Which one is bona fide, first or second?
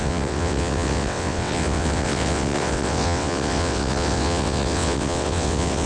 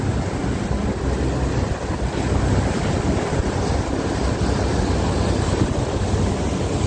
second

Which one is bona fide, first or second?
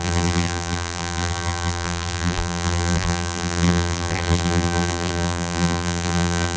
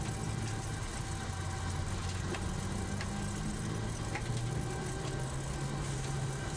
second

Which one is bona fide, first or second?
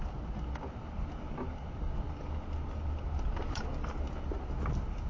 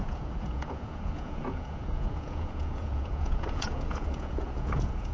first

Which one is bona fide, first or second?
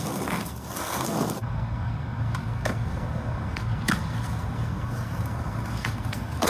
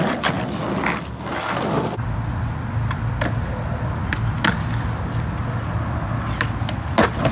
second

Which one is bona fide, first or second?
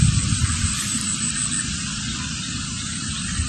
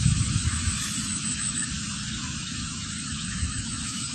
first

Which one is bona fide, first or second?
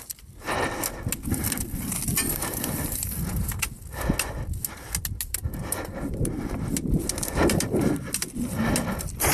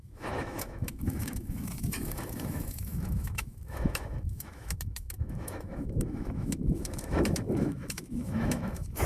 first